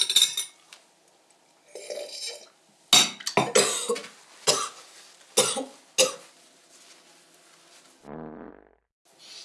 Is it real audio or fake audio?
real